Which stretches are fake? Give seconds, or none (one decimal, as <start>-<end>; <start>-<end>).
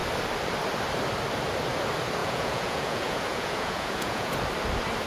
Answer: 2.2-4.3